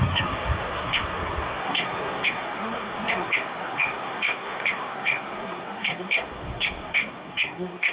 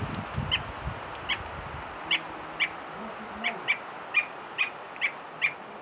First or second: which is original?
second